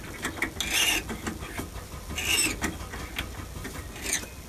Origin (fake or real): real